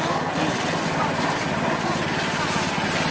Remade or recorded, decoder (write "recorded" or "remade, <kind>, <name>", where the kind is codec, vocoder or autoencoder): recorded